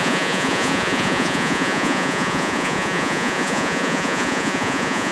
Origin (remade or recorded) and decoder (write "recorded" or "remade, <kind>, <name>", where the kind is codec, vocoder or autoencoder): remade, vocoder, Vocos